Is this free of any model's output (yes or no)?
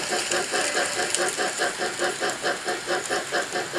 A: yes